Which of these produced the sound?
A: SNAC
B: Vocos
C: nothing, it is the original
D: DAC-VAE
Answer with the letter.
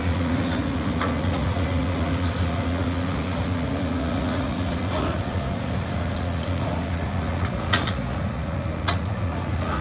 B